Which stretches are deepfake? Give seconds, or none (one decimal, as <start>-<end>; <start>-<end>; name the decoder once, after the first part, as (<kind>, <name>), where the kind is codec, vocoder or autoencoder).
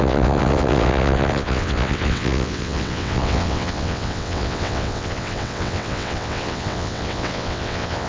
0.0-8.1 (vocoder, WaveNeXt)